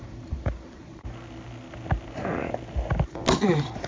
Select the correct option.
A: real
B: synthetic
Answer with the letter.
A